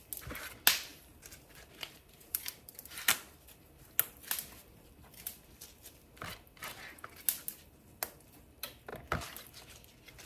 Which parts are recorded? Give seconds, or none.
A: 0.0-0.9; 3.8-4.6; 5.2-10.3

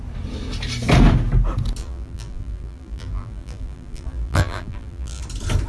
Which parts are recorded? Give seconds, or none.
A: 0.0-1.8; 5.2-5.7